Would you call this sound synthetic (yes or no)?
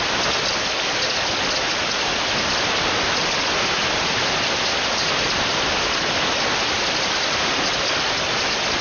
no